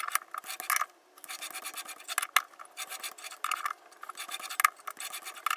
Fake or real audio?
real